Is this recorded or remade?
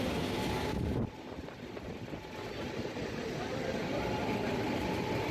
recorded